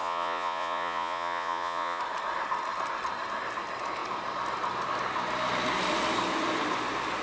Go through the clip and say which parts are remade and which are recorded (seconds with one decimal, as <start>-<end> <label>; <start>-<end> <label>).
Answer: 0.0-2.0 remade; 2.0-7.2 recorded